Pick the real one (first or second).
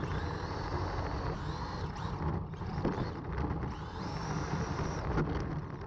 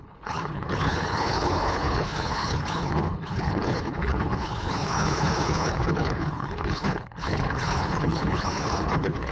first